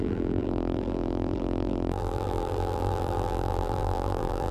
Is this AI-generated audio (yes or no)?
yes